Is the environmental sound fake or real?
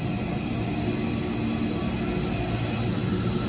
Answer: real